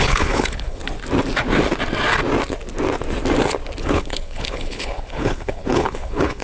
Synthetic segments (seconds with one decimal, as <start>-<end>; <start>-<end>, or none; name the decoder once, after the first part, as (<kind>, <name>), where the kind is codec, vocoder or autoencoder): 0.0-0.8 (codec, HILCodec); 3.8-6.4